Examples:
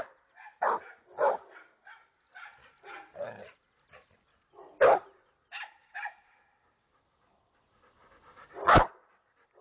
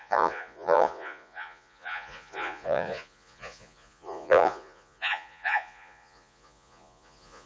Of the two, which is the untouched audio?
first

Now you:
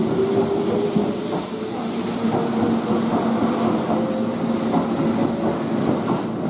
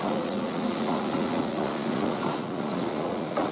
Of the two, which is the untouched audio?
first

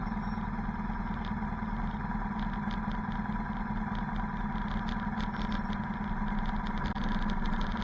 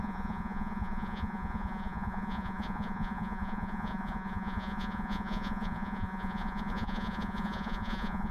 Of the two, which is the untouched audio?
first